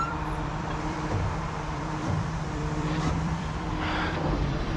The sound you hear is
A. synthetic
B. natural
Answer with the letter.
A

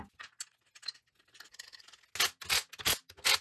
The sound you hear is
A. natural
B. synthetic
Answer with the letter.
A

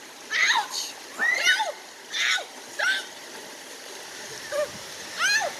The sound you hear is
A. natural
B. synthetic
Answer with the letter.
B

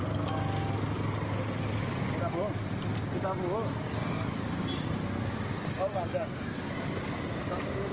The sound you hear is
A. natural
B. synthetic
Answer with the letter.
A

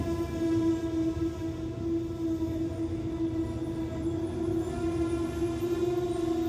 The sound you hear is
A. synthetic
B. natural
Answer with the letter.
B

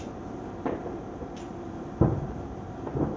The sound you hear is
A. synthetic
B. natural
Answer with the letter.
A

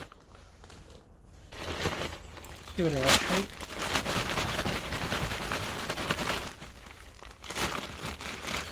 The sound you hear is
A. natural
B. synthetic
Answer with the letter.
B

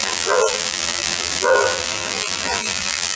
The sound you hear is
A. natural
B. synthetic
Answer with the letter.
B